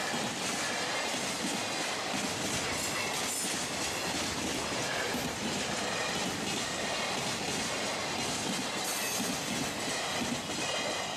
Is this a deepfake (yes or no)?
no